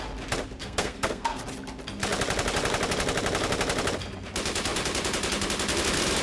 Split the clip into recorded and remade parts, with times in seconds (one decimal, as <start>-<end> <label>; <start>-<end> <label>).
0.0-0.6 recorded; 0.6-1.4 remade; 1.4-6.2 recorded